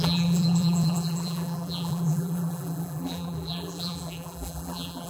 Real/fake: fake